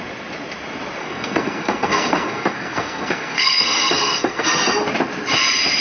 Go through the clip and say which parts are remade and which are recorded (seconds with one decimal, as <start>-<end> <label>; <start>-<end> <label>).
0.0-1.0 recorded; 1.0-4.5 remade; 4.5-5.8 recorded

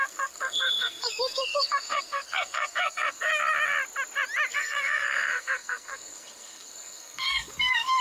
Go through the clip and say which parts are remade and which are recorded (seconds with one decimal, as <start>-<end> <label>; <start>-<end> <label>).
0.0-3.3 remade; 3.3-4.5 recorded; 4.5-8.0 remade

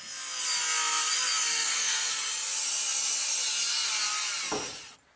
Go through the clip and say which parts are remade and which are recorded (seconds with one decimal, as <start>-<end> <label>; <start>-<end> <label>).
0.0-1.5 recorded; 1.5-2.2 remade; 2.2-5.2 recorded

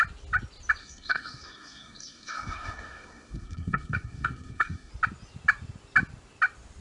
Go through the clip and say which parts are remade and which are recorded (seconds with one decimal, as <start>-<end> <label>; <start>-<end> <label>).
0.0-0.8 recorded; 0.8-4.9 remade; 4.9-6.8 recorded